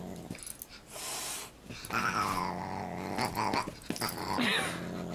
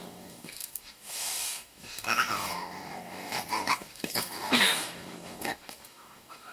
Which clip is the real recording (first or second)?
first